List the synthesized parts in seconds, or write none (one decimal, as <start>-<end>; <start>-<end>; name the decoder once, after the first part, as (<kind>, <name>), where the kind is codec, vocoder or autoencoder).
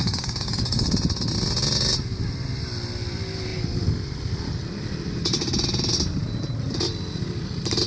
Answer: 0.0-0.9 (codec, DAC)